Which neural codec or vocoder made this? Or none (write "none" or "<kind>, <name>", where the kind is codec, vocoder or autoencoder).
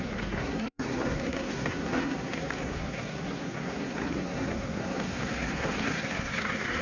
codec, SNAC